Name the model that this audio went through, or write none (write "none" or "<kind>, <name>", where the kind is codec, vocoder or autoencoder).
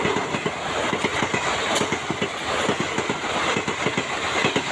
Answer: none